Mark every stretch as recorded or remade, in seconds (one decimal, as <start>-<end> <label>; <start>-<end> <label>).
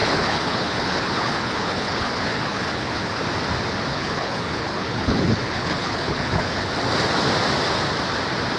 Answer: 0.0-3.2 remade; 3.2-3.9 recorded; 3.9-6.7 remade; 6.7-8.6 recorded